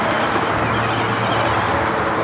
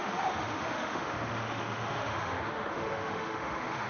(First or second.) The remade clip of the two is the second